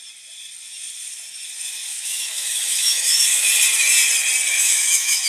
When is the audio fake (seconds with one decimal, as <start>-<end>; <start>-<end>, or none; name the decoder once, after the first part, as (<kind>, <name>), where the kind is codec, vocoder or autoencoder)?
1.9-3.5 (autoencoder, DAC-VAE); 4.6-5.3